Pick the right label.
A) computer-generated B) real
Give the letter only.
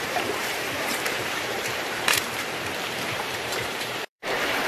A